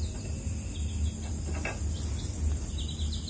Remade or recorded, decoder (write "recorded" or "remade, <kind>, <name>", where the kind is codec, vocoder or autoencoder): recorded